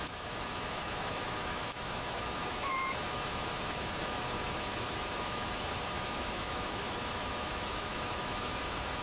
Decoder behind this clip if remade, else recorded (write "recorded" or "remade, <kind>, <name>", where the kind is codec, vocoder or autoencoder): remade, autoencoder, DAC-VAE